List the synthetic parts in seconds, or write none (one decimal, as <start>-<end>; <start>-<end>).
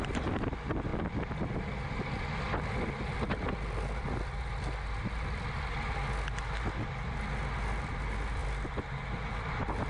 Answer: none